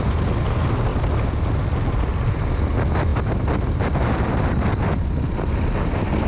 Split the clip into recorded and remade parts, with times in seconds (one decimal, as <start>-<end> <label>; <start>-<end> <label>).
0.0-6.3 recorded